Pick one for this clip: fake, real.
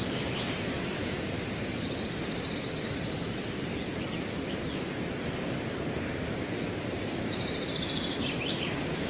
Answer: fake